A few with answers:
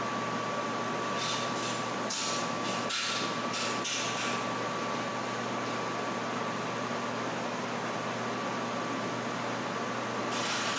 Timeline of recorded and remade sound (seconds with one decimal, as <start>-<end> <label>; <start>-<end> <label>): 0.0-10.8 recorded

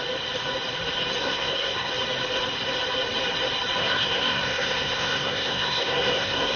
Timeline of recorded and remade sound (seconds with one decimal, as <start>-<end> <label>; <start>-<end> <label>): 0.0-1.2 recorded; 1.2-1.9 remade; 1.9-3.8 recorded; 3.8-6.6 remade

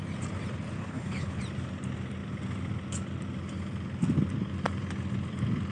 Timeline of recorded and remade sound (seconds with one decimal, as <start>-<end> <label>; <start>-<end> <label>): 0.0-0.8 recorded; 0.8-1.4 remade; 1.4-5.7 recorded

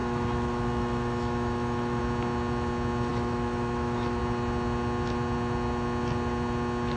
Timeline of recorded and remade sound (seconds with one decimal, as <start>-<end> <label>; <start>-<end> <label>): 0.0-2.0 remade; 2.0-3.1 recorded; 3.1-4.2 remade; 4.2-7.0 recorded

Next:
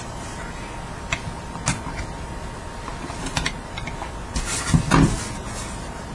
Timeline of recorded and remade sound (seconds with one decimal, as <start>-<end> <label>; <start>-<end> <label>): 0.0-6.1 recorded

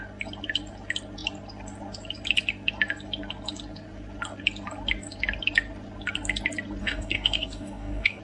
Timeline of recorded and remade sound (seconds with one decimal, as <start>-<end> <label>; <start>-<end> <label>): 0.0-6.8 recorded; 6.8-8.2 remade